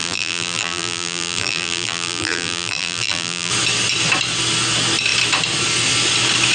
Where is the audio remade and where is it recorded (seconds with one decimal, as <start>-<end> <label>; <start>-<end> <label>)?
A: 0.0-3.5 remade; 3.5-6.5 recorded